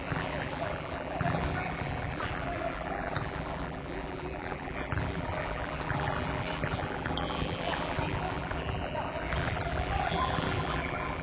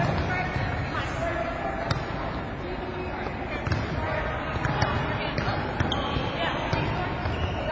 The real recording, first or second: second